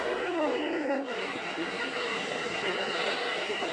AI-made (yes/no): yes